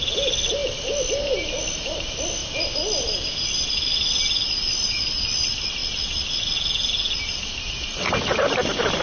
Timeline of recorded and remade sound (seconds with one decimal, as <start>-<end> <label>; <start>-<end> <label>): 0.0-9.0 recorded